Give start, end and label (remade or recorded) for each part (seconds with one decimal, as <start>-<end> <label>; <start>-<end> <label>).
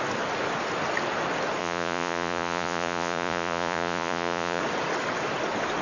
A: 0.0-1.6 recorded; 1.6-4.6 remade; 4.6-5.8 recorded